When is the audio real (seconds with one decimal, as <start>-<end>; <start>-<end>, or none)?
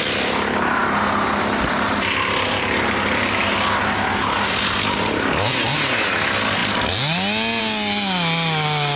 0.0-9.0